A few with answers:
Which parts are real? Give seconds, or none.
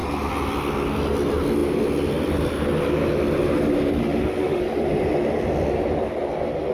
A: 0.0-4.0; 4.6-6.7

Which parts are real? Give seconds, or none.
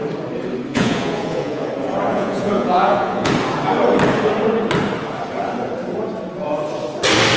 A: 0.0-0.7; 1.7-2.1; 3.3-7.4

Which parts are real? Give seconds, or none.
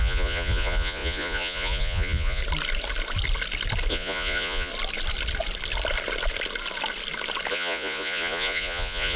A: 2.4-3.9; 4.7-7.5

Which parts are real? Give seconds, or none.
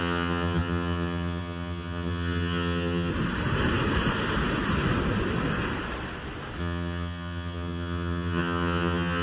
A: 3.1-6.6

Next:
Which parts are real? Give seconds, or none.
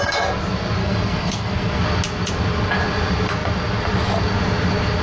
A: 0.0-0.8; 1.8-5.0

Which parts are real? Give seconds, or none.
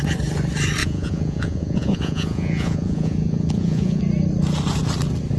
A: 0.0-0.8; 4.0-5.4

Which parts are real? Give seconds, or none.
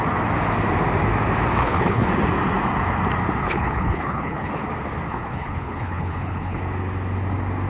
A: 0.0-1.6; 2.1-3.4; 4.5-5.1; 6.6-7.7